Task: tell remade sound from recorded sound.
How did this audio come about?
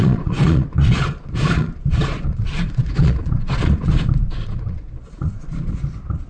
remade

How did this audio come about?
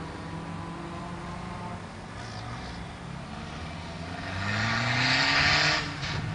recorded